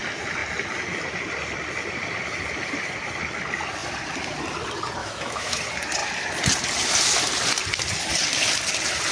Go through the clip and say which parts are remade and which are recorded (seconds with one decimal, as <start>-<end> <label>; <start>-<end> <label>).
0.0-5.0 recorded; 5.0-5.6 remade; 5.6-9.1 recorded